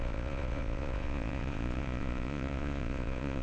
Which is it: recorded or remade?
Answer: remade